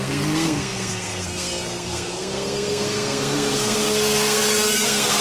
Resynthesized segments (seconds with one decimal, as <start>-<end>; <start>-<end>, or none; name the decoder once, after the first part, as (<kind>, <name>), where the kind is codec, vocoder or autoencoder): 0.0-5.2 (codec, SNAC)